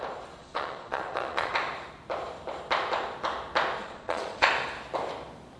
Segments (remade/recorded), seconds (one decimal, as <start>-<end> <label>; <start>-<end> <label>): 0.0-0.4 recorded; 0.4-1.5 remade; 1.5-3.8 recorded; 3.8-4.5 remade; 4.5-5.6 recorded